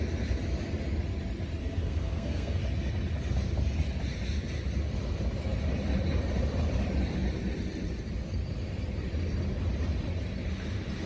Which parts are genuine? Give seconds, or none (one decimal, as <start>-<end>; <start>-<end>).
0.0-1.6; 2.6-11.1